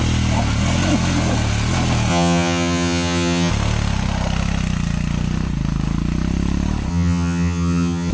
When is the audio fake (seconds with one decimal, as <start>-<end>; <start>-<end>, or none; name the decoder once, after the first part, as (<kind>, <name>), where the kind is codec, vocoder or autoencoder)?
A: 2.1-3.5 (vocoder, HiFi-GAN); 6.9-8.1

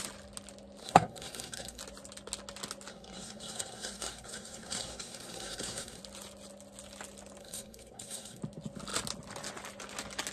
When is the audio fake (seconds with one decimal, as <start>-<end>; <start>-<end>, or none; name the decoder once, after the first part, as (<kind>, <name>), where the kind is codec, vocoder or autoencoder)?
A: 0.8-1.8 (codec, SNAC); 2.9-6.0; 7.4-8.4

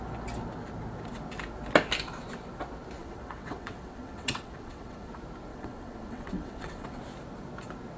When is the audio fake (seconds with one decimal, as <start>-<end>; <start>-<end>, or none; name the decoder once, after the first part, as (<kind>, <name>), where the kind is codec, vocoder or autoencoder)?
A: 3.0-5.1 (vocoder, WaveNeXt); 5.5-7.0

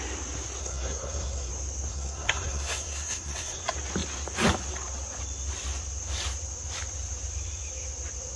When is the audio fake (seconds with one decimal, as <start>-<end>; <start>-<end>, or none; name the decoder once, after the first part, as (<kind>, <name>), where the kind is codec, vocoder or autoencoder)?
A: 0.6-1.5 (codec, SNAC); 1.9-3.6

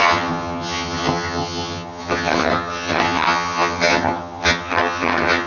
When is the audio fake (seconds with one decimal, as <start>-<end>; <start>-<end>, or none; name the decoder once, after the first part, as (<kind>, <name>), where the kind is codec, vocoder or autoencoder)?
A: 0.0-5.5 (vocoder, HiFi-GAN)

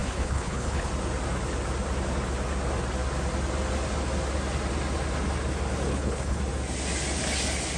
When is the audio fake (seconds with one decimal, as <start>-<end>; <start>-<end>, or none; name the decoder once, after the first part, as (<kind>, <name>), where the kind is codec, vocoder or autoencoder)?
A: 0.0-0.9 (codec, HILCodec); 5.9-6.4

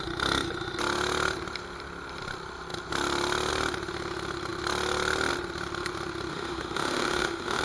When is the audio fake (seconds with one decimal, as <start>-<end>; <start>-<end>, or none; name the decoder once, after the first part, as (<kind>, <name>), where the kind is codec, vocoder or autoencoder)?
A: 6.3-7.6 (autoencoder, DAC-VAE)